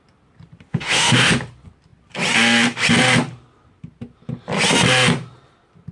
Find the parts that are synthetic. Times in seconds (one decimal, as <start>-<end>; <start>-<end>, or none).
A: 0.7-1.3